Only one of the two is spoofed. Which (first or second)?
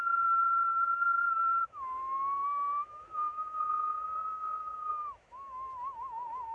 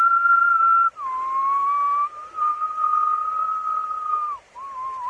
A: first